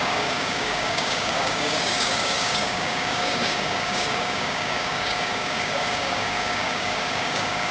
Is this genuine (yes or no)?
no